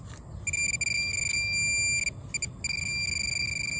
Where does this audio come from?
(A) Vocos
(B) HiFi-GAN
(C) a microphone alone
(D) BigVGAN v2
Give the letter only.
C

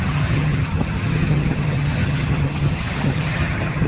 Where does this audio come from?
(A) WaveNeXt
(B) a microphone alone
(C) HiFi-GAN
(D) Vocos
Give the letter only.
C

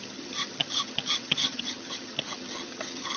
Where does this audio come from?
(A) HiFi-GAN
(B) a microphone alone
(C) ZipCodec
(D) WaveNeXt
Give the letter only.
A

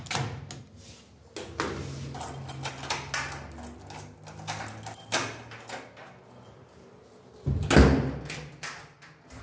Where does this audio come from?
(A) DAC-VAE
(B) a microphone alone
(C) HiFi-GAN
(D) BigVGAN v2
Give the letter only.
B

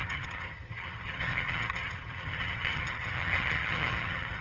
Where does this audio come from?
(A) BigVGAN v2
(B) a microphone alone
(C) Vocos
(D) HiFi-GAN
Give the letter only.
D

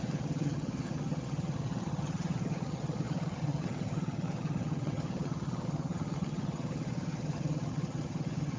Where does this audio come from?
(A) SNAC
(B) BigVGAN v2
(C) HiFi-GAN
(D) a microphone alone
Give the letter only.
C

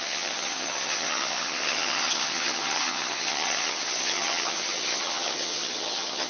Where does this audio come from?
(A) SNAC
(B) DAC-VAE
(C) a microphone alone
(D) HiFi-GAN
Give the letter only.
D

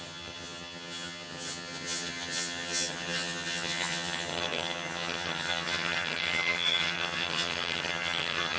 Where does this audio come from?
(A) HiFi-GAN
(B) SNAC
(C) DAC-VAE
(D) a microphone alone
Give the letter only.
A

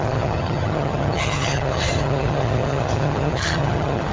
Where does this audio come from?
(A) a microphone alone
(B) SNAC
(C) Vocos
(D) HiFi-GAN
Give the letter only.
D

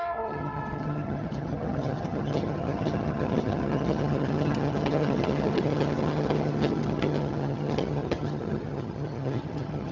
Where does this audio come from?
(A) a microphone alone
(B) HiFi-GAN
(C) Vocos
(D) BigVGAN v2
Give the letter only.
B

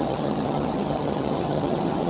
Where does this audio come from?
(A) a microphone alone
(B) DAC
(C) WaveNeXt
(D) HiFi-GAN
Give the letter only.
D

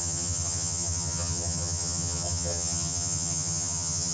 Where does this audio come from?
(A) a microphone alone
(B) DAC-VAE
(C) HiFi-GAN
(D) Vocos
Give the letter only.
C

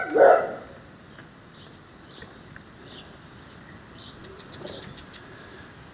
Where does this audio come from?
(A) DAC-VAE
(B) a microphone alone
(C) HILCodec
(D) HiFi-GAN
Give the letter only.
B